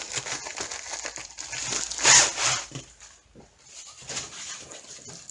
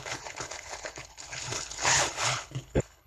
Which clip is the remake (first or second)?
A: second